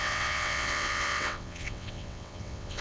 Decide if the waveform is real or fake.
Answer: fake